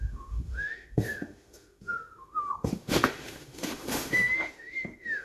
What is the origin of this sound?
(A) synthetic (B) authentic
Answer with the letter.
A